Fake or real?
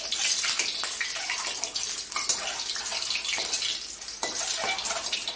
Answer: real